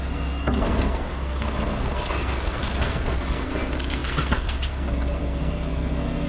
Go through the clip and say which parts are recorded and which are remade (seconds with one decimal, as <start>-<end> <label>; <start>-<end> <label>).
0.0-6.3 remade